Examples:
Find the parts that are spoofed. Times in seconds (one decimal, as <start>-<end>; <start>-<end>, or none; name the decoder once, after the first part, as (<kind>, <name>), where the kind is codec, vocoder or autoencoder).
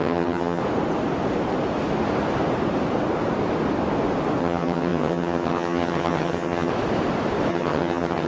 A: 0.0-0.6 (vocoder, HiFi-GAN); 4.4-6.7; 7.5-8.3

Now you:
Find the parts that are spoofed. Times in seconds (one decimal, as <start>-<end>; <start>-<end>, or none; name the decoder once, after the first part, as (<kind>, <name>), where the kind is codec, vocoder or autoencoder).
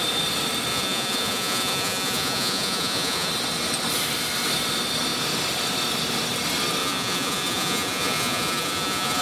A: 0.7-3.3 (vocoder, Vocos); 6.8-9.2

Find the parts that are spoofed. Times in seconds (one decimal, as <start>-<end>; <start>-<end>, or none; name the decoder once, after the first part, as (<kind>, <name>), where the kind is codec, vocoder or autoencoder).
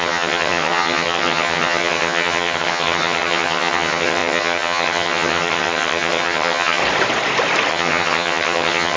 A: 0.0-6.8 (vocoder, HiFi-GAN); 7.7-9.0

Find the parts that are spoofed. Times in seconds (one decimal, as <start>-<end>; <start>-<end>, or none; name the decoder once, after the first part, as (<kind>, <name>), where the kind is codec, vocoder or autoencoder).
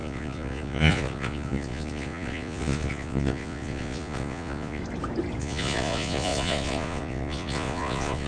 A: 0.0-4.8 (vocoder, Vocos); 5.4-8.3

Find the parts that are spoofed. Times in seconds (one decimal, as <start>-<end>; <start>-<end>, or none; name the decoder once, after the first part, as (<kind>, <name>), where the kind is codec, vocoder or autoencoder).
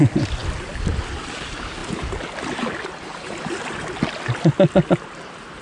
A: none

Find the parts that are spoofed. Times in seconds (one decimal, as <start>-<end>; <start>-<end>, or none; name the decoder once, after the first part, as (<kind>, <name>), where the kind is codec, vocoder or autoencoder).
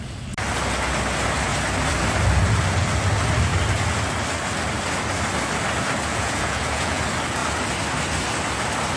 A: 6.1-7.0 (vocoder, Vocos)